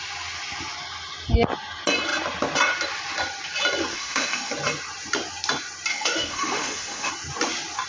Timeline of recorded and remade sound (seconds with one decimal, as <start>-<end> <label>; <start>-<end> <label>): 0.0-3.9 recorded; 3.9-4.5 remade; 4.5-5.9 recorded; 5.9-7.1 remade; 7.1-7.9 recorded